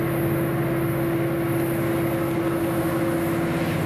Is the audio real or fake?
real